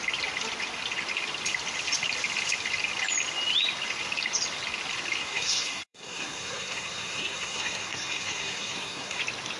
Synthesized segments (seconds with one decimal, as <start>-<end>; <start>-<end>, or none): 5.2-9.2